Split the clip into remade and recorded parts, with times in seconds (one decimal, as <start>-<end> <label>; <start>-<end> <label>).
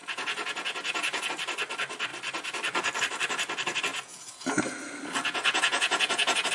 0.0-1.3 remade; 1.3-3.9 recorded; 3.9-4.6 remade; 4.6-5.2 recorded; 5.2-6.5 remade